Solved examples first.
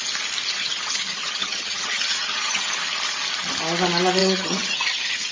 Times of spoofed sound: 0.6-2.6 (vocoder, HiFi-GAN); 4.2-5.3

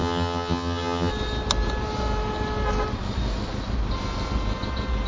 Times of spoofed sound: 0.0-1.1 (vocoder, HiFi-GAN)

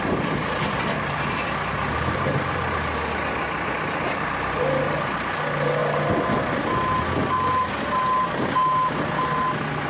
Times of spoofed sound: none

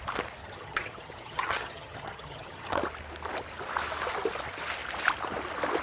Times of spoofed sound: 0.4-2.8 (vocoder, HiFi-GAN)

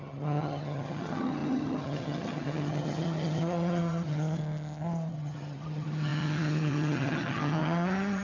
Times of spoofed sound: 0.0-4.4 (vocoder, HiFi-GAN); 5.1-8.2

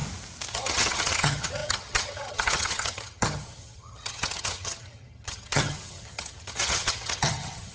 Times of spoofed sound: 0.5-7.7 (vocoder, HiFi-GAN)

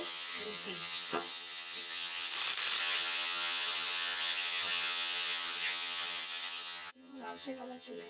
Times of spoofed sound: 0.0-2.3 (vocoder, HiFi-GAN); 2.8-8.1